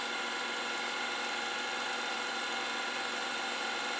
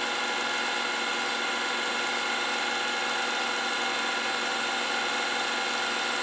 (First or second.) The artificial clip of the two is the first